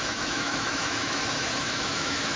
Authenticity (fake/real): fake